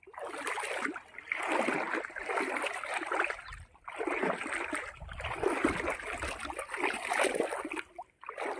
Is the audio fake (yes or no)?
no